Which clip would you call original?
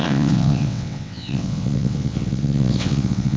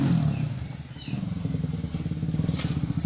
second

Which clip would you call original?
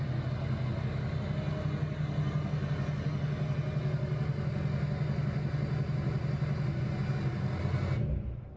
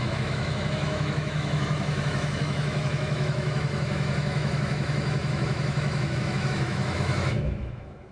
first